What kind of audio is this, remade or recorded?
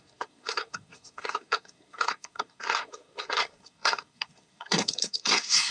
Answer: remade